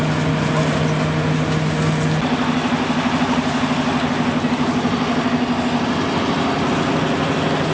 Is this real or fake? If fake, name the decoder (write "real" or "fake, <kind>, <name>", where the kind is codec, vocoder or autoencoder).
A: real